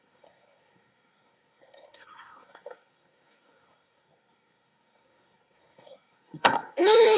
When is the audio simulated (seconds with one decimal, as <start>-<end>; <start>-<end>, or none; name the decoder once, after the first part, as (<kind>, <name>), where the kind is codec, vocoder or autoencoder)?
0.0-7.2 (codec, SNAC)